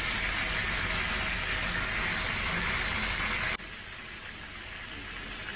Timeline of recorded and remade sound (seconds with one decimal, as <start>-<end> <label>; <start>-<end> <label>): 0.0-5.6 recorded